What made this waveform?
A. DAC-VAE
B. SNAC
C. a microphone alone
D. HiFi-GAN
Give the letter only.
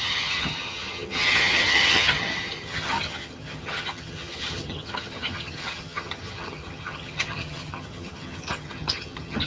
D